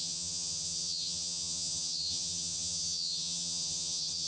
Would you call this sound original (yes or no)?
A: no